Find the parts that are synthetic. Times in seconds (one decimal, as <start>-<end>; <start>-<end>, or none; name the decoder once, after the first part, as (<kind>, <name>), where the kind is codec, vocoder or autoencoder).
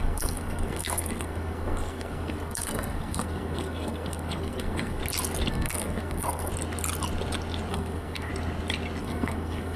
0.0-5.0 (codec, SNAC); 5.5-6.5; 7.7-8.3; 9.0-9.8